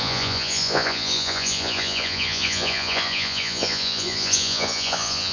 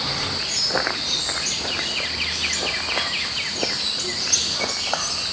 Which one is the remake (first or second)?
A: first